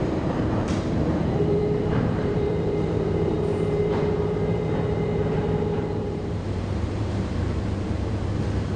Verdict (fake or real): fake